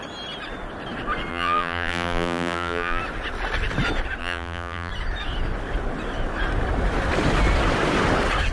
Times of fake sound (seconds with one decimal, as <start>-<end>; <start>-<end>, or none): 1.3-3.0; 4.2-4.9

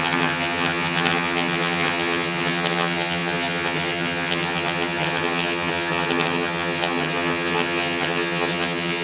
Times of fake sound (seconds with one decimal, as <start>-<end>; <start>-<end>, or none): 0.0-9.0

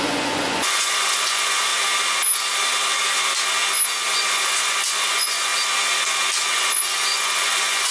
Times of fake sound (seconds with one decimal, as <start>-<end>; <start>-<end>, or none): 0.0-1.7; 4.3-5.5; 6.5-7.9